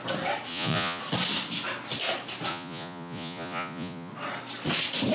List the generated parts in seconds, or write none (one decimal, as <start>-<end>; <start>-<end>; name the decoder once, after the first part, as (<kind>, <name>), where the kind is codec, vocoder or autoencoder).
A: 0.5-1.0 (vocoder, Vocos); 2.5-4.1